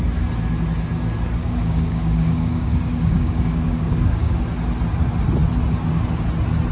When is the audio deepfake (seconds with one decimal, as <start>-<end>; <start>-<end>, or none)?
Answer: 1.4-4.4

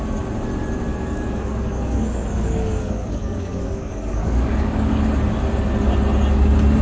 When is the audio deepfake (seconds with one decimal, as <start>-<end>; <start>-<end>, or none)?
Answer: 0.9-5.0

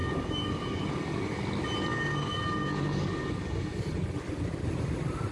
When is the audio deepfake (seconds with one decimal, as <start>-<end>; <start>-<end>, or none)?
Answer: 0.0-1.3; 1.9-3.8